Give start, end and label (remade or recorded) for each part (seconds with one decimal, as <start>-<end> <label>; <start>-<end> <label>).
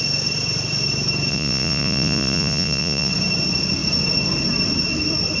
0.0-1.3 recorded; 1.3-3.1 remade; 3.1-5.4 recorded